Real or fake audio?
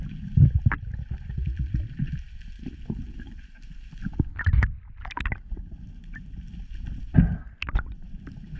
real